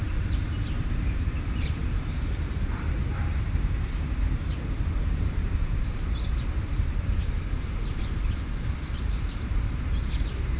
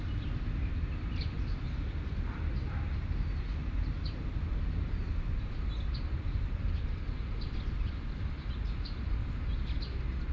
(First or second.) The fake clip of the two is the first